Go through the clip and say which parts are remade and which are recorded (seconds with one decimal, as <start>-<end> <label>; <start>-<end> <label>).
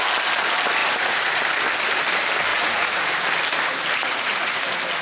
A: 0.0-0.8 recorded; 0.8-1.4 remade; 1.4-2.5 recorded; 2.5-3.1 remade; 3.1-4.0 recorded; 4.0-4.6 remade; 4.6-5.0 recorded